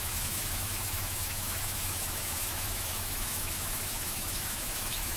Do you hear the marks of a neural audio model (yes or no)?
yes